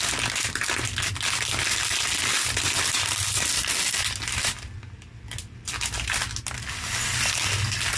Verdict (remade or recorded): recorded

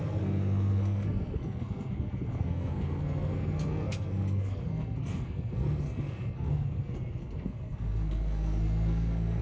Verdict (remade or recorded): remade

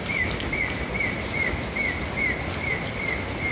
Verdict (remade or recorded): recorded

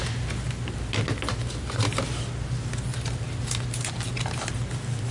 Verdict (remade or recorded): recorded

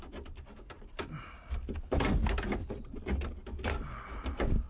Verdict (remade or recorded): recorded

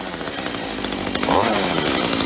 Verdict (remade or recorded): recorded